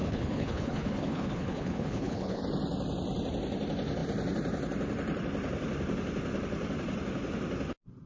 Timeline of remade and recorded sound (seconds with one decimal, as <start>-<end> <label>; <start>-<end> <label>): 0.0-2.4 remade; 2.4-8.1 recorded